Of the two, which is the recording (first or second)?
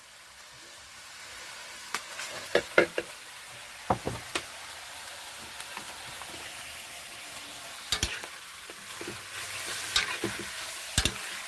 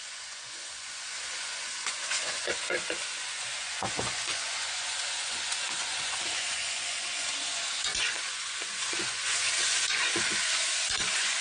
first